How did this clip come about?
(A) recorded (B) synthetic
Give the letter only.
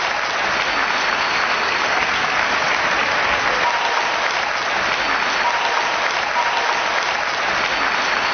A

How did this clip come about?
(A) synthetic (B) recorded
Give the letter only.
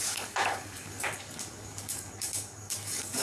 A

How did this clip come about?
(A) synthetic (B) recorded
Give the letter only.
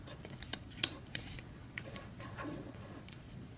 A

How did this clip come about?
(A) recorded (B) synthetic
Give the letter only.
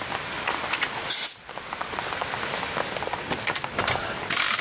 A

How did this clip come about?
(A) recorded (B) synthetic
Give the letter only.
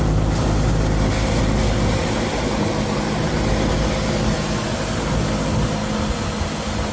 A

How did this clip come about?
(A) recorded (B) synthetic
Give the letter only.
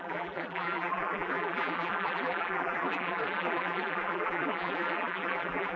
B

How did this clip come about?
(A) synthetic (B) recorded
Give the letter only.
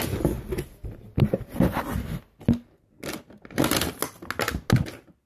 B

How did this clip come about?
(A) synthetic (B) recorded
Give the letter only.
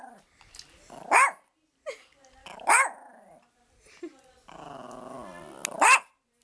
B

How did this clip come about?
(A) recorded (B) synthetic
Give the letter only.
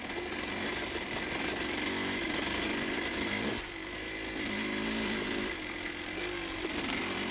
A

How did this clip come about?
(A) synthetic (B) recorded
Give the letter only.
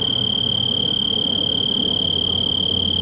B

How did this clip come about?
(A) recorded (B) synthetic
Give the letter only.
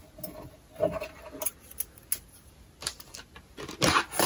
A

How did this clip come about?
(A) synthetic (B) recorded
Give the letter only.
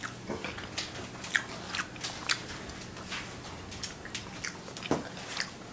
B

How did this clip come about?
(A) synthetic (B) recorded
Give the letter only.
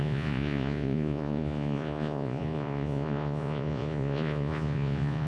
A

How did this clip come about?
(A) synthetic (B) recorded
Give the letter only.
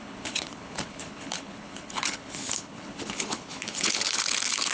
A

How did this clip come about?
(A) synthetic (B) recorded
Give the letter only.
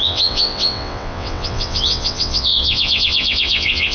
A